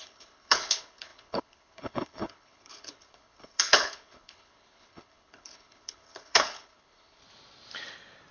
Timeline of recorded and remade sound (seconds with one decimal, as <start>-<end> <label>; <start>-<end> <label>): 0.0-7.2 remade; 7.2-8.3 recorded